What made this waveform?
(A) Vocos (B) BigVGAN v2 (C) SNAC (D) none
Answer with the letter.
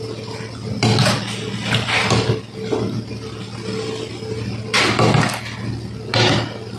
D